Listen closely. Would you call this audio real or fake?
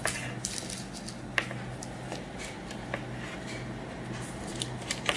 real